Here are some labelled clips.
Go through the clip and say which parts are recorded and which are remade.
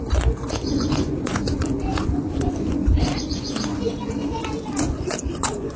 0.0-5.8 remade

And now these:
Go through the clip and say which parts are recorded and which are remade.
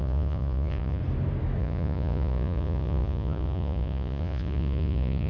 0.0-1.0 remade; 1.0-1.6 recorded; 1.6-5.3 remade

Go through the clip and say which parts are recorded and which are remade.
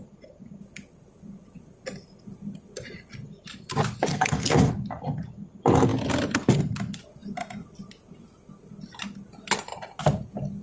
0.0-4.1 recorded; 4.1-4.7 remade; 4.7-10.6 recorded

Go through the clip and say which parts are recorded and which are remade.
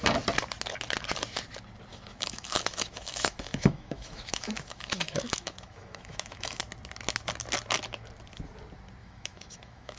0.0-1.9 recorded; 1.9-6.6 remade; 6.6-9.0 recorded; 9.0-10.0 remade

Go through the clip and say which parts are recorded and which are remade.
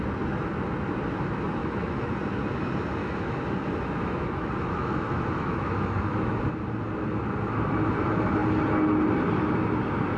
0.0-1.6 recorded; 1.6-2.1 remade; 2.1-3.0 recorded; 3.0-6.3 remade; 6.3-10.2 recorded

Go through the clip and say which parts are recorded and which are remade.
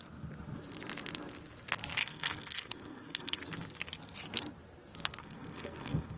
0.0-2.0 recorded; 2.0-3.4 remade; 3.4-5.2 recorded; 5.2-6.2 remade